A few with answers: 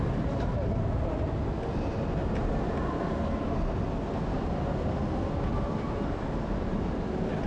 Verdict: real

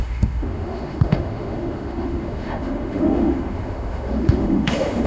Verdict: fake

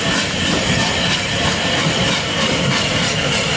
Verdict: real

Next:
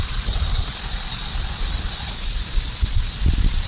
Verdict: real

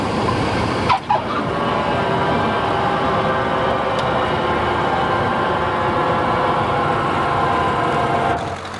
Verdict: real